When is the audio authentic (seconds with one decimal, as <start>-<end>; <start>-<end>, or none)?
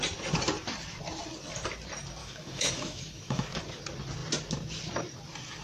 0.0-2.2; 3.6-5.6